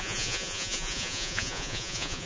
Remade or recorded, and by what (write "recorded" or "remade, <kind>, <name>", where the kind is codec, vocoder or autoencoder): remade, vocoder, Vocos